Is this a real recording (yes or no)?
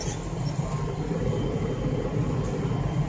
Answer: yes